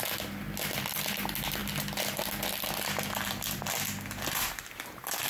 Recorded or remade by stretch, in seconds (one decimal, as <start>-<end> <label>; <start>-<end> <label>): 0.0-5.3 recorded